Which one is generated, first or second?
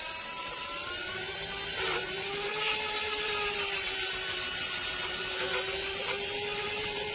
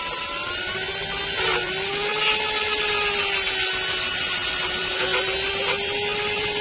first